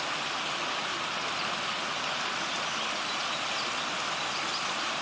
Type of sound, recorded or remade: recorded